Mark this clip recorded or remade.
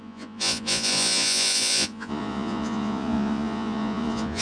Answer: remade